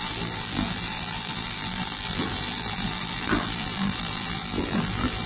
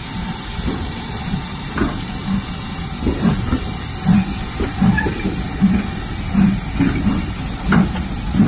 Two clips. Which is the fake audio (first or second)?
first